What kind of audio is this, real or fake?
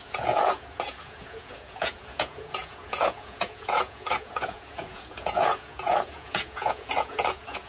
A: fake